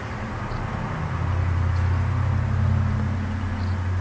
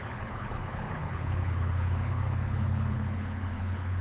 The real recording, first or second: first